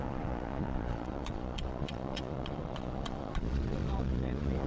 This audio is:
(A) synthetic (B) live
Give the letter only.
A